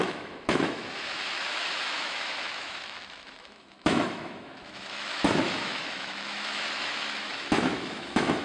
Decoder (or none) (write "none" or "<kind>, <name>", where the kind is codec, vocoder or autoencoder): autoencoder, DAC-VAE